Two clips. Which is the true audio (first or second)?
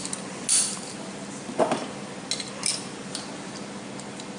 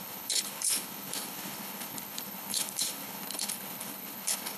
first